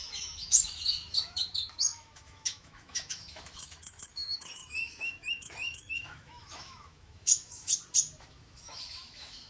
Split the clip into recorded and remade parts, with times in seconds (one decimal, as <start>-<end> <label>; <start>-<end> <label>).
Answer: 0.0-7.7 remade; 7.7-8.2 recorded; 8.2-9.5 remade